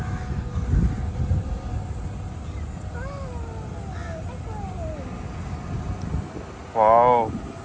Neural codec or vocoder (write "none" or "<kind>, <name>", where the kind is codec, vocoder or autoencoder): none